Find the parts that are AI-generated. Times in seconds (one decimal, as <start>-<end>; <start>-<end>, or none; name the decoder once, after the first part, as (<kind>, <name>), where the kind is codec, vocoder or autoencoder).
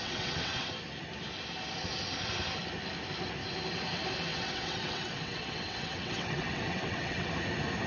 0.0-0.7 (vocoder, WaveNeXt); 4.3-7.3